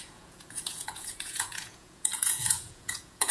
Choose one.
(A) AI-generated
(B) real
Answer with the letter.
A